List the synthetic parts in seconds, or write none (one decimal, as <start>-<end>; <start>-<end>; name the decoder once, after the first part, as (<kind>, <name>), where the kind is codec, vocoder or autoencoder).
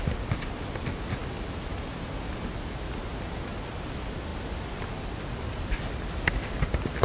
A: none